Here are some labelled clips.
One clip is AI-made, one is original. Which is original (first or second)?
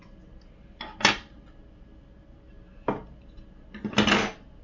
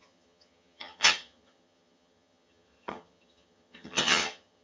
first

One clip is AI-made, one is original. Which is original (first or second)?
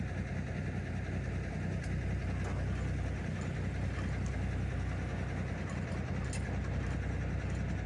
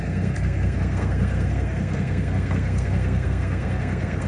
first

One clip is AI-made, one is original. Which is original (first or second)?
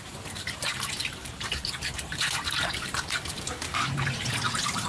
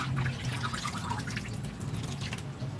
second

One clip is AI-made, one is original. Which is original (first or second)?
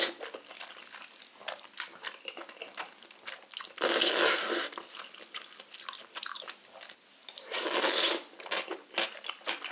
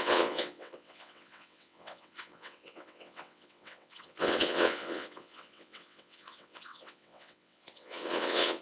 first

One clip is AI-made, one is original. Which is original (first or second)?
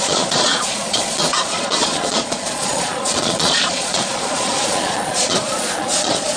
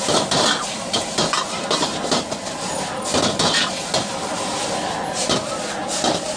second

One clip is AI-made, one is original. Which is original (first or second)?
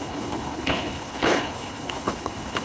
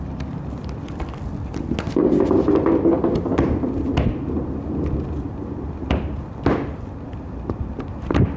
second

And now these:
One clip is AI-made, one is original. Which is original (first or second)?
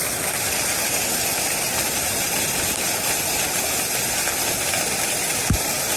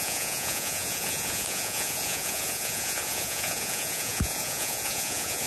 first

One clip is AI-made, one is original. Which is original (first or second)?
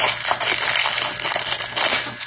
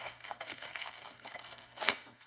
first